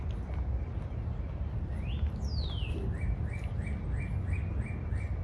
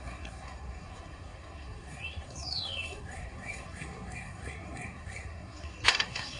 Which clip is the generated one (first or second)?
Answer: second